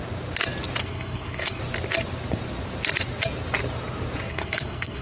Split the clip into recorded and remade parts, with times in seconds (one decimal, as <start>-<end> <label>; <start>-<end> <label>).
0.0-0.8 recorded; 0.8-1.6 remade; 1.6-4.3 recorded; 4.3-5.0 remade